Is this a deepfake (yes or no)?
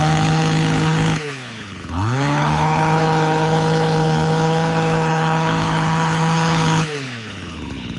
yes